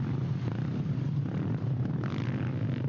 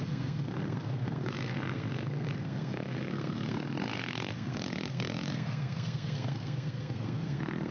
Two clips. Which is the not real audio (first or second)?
second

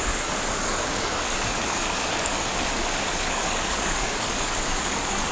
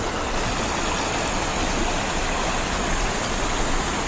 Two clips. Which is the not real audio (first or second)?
first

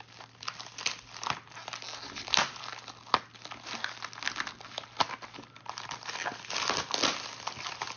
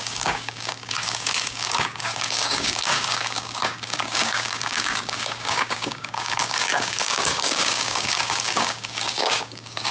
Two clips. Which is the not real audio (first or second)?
second